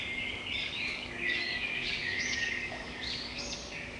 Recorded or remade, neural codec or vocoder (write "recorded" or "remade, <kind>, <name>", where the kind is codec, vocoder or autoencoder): remade, codec, DAC